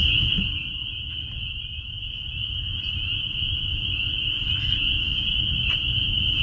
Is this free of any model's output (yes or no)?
yes